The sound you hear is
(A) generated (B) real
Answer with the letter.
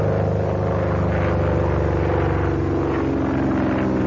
B